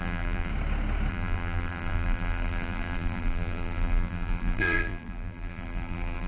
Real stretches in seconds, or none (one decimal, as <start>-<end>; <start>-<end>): 0.5-1.1